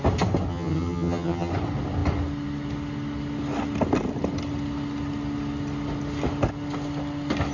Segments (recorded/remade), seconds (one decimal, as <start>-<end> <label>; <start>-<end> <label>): 0.0-0.5 recorded; 0.5-1.5 remade; 1.5-7.5 recorded